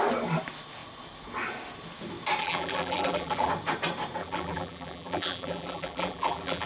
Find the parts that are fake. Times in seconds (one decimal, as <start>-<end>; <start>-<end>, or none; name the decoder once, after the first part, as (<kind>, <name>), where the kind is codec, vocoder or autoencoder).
2.4-3.5 (vocoder, BigVGAN v2); 4.2-6.7